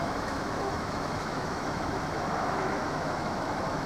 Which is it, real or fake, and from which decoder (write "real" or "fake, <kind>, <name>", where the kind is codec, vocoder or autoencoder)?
fake, autoencoder, DAC-VAE